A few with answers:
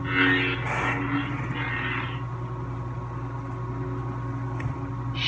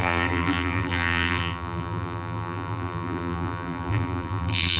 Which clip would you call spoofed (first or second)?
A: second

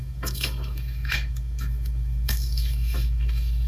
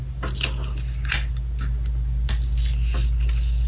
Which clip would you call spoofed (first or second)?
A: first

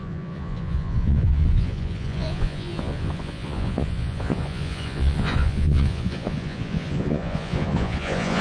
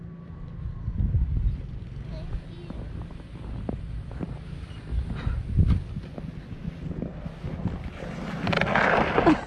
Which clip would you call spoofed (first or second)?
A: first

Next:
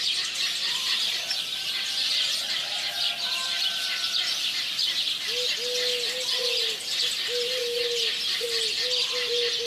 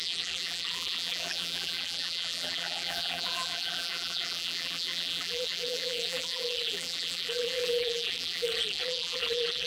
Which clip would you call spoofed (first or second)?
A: second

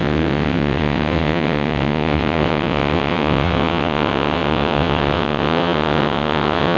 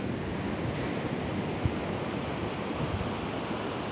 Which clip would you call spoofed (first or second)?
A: first